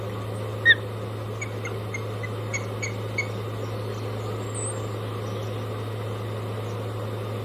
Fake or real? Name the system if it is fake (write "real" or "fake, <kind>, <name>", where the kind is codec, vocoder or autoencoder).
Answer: real